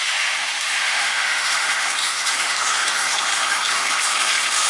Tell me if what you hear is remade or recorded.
remade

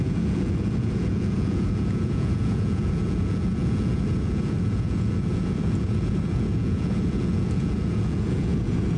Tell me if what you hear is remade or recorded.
remade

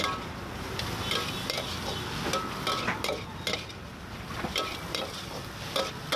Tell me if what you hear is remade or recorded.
recorded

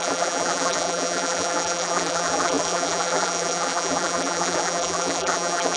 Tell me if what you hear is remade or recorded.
remade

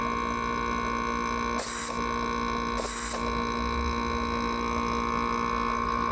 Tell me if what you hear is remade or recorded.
recorded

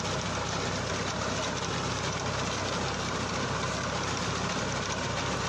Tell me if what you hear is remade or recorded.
recorded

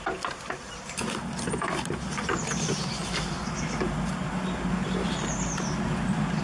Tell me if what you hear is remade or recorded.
recorded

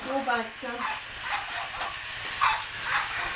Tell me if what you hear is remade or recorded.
recorded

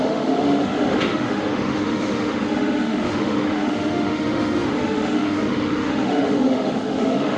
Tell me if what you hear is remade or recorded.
remade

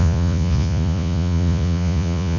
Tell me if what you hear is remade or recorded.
remade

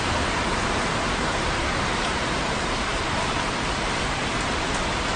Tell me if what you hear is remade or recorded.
remade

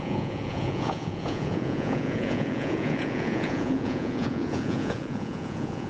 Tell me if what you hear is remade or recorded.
remade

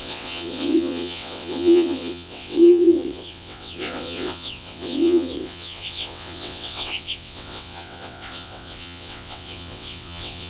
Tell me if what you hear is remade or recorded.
remade